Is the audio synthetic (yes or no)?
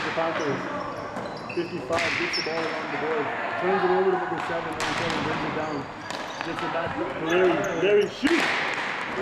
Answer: no